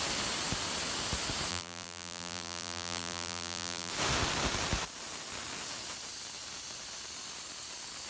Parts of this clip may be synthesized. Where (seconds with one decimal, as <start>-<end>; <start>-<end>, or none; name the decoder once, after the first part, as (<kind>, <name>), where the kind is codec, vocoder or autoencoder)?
1.5-3.9 (vocoder, BigVGAN v2)